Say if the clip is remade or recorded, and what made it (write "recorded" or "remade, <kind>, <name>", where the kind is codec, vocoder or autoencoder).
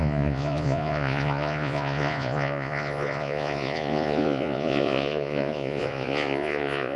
remade, vocoder, Vocos